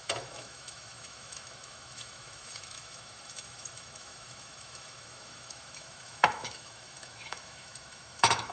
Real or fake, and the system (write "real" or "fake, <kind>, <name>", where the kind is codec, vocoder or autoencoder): fake, autoencoder, DAC-VAE